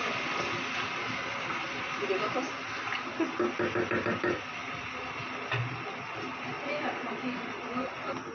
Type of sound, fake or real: real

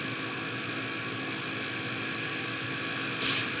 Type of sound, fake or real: real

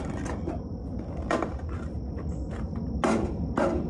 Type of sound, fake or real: real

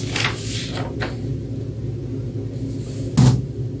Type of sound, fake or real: real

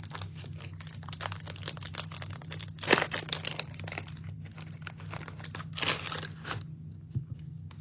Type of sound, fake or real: real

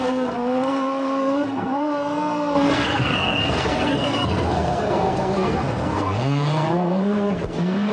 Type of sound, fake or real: fake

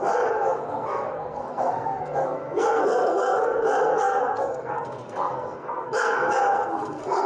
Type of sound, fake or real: fake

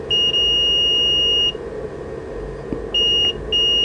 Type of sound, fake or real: real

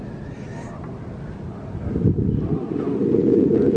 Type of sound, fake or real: real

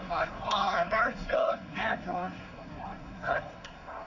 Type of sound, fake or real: fake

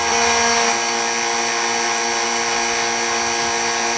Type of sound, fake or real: real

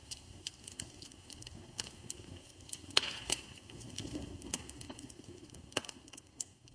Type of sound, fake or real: fake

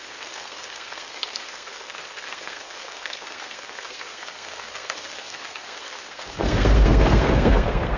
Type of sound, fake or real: fake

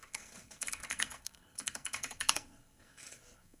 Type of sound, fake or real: fake